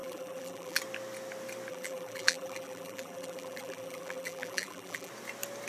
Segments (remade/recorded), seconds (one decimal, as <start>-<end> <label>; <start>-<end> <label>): 0.0-0.8 remade; 0.8-1.7 recorded; 1.7-5.1 remade; 5.1-5.7 recorded